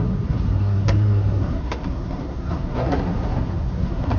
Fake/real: fake